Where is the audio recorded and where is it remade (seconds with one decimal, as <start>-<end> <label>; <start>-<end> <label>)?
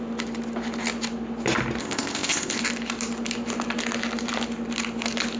0.0-1.8 recorded; 1.8-2.6 remade; 2.6-5.4 recorded